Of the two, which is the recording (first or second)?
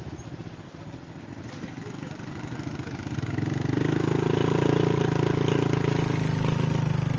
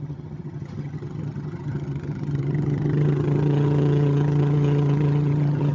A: first